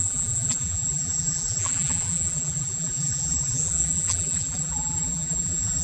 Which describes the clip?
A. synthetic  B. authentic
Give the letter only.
A